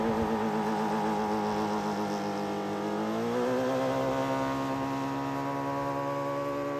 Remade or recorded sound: recorded